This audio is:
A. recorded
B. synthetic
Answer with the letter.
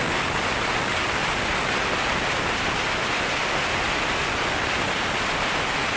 A